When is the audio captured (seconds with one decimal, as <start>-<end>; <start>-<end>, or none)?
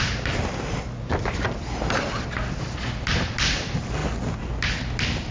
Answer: 0.0-5.3